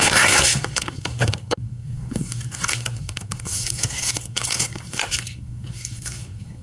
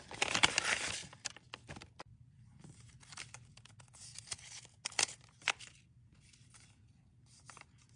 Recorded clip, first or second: second